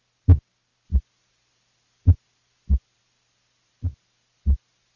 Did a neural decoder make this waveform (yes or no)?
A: no